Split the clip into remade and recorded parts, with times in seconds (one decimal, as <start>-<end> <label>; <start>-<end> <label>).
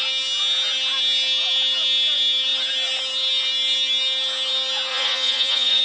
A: 0.0-4.9 recorded; 4.9-5.8 remade